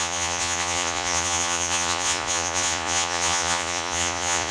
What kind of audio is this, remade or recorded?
remade